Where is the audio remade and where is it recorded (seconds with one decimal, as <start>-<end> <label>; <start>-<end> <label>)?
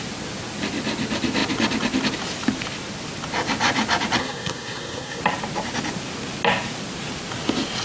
0.0-4.2 recorded; 4.2-5.2 remade; 5.2-7.8 recorded